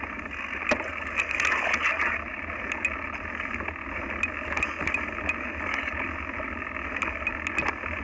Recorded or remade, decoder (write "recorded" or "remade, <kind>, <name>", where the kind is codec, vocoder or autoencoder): recorded